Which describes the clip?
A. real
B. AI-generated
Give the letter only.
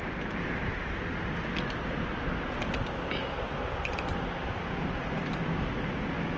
A